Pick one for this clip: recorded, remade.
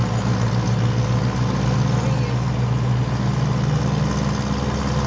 recorded